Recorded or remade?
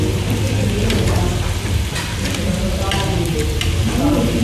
recorded